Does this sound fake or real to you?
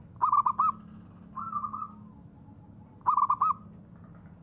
real